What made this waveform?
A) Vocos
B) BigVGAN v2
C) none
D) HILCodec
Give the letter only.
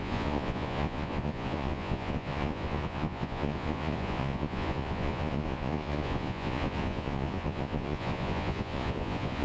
A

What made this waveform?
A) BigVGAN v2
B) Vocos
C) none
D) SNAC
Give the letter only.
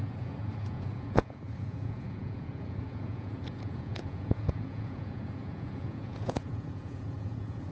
B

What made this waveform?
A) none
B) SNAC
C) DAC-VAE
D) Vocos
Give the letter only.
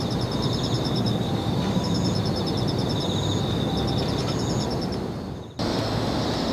A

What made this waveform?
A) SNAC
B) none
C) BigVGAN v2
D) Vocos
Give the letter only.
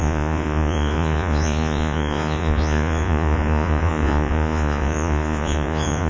D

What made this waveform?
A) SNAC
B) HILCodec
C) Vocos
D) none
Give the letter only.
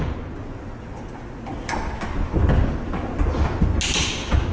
D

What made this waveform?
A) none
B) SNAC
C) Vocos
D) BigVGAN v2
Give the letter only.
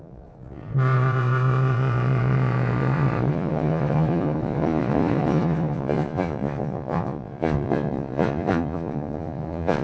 C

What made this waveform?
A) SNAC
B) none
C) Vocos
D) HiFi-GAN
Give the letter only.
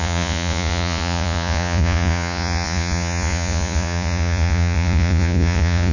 C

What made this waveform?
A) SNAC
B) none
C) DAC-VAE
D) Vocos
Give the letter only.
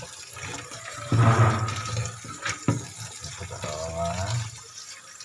B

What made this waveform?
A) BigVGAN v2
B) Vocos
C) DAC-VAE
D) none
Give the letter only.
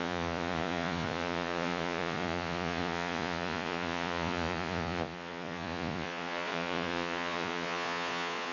B